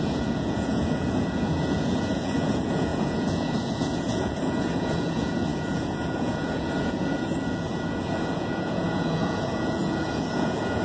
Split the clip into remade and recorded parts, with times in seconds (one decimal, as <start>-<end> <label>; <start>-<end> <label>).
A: 0.0-10.8 remade